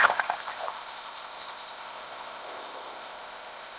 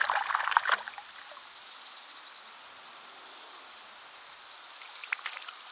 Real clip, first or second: second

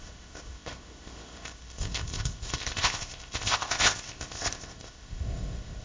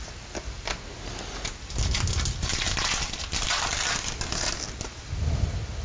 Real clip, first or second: second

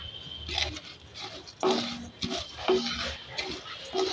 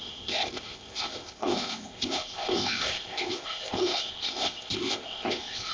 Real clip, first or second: first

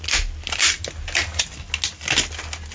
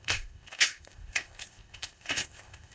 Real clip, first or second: first